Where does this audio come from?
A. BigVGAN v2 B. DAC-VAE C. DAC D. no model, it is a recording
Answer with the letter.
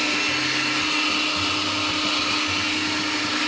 D